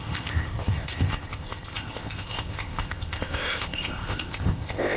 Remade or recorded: remade